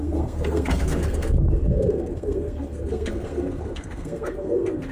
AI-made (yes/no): yes